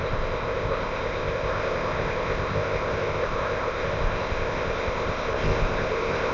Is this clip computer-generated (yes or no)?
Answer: yes